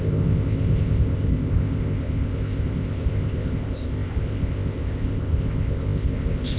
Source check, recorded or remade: remade